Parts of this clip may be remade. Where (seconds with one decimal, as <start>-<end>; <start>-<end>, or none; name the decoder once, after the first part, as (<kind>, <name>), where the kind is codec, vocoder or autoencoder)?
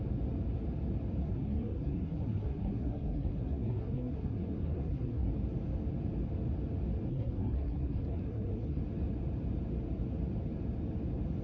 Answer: 1.2-5.3 (codec, SNAC); 7.1-8.8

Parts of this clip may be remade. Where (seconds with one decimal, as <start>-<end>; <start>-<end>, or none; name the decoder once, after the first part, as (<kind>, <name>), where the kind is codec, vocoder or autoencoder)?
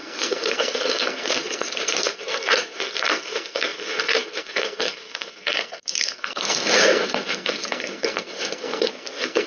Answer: 0.0-9.5 (codec, SNAC)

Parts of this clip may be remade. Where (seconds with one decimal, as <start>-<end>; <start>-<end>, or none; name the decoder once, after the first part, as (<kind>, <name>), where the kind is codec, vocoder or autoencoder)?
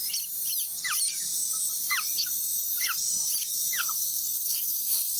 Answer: 3.8-5.2 (codec, SNAC)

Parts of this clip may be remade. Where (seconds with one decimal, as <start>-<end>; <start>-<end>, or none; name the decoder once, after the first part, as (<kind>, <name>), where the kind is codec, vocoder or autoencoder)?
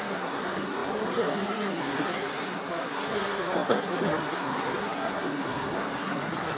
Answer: 0.0-6.6 (codec, SNAC)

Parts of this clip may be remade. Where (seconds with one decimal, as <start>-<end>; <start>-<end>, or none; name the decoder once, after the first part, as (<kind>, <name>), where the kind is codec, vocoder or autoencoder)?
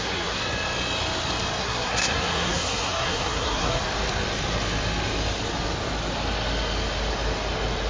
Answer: 0.0-0.4 (codec, SNAC); 1.6-3.8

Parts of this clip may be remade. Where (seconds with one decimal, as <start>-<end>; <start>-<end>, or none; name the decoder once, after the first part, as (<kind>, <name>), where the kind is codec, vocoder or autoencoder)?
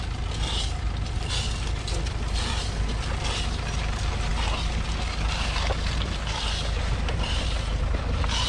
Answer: none